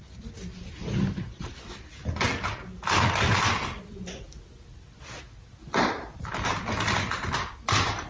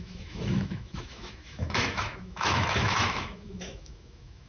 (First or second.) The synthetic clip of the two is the second